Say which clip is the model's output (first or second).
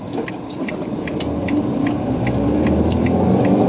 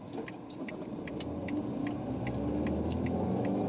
first